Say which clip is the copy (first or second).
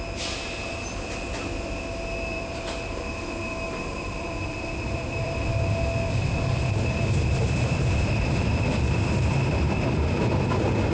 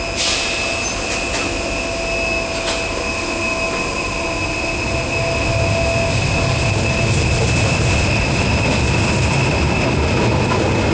first